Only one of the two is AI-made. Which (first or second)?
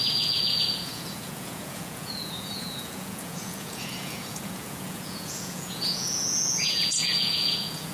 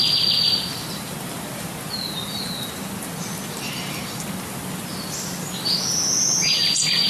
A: first